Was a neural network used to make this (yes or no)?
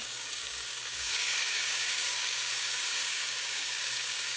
yes